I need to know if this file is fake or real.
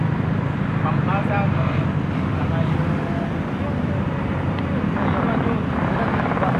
real